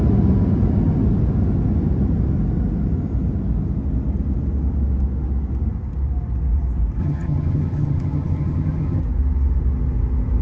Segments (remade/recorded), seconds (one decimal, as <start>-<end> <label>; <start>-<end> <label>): 0.0-7.0 recorded; 7.0-9.0 remade; 9.0-10.4 recorded